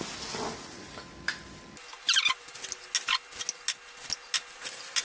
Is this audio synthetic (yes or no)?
no